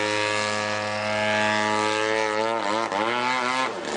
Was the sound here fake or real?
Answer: real